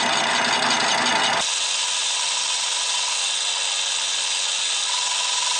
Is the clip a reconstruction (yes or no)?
no